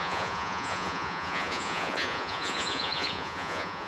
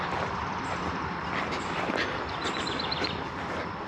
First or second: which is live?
second